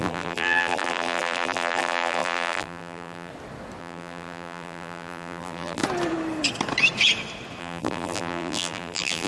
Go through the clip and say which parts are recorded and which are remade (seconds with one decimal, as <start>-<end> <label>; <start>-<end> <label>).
0.0-3.3 remade; 3.3-3.8 recorded; 3.8-5.8 remade; 5.8-7.6 recorded; 7.6-9.3 remade